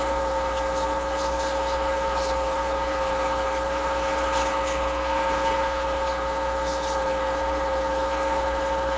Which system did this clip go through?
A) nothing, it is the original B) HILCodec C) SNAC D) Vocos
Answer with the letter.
B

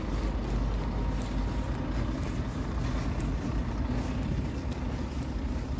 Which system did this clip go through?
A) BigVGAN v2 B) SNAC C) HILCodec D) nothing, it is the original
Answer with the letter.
D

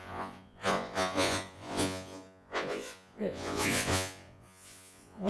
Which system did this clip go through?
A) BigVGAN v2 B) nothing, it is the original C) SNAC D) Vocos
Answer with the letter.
D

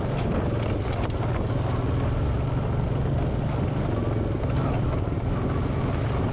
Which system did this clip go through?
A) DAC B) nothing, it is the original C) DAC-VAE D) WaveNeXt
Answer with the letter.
B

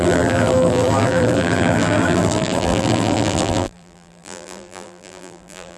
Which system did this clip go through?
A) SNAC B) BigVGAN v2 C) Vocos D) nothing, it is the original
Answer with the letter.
B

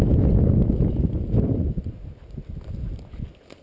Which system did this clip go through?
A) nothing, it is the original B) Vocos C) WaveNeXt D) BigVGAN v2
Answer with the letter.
D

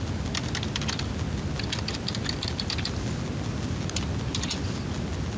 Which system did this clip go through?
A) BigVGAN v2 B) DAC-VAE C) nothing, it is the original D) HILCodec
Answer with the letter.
C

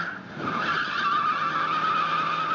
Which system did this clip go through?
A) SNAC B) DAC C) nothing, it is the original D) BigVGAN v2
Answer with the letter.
C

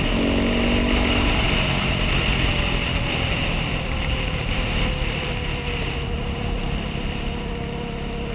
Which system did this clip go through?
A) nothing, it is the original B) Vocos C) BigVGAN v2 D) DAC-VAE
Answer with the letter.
A